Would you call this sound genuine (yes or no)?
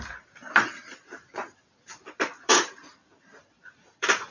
no